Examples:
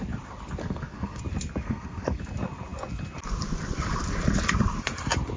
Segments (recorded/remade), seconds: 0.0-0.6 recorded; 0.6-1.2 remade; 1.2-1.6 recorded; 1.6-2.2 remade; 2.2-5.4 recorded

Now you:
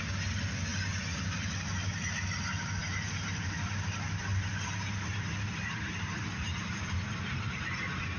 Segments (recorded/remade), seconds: 0.0-2.8 recorded; 2.8-6.3 remade; 6.3-8.2 recorded

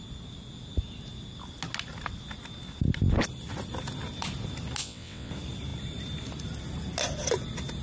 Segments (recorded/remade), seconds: 0.0-4.8 recorded; 4.8-5.3 remade; 5.3-7.8 recorded

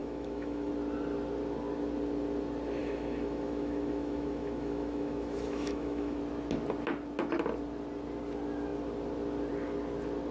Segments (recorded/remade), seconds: 0.0-0.7 remade; 0.7-2.8 recorded; 2.8-6.2 remade; 6.2-10.3 recorded